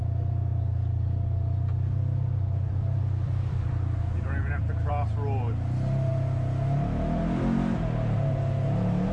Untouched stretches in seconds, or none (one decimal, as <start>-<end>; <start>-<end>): 0.0-0.5; 4.9-9.1